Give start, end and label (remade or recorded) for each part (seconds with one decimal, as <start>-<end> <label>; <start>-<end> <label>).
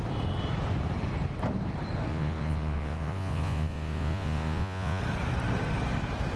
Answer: 0.0-2.1 recorded; 2.1-5.0 remade; 5.0-6.4 recorded